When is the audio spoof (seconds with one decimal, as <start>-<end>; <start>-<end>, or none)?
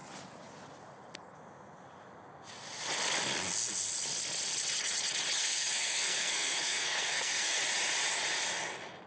5.4-7.6